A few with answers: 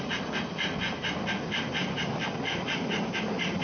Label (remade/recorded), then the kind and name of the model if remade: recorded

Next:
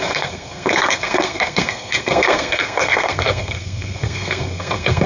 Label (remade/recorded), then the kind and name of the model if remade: remade, codec, SNAC